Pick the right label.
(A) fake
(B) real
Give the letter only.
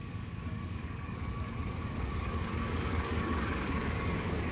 A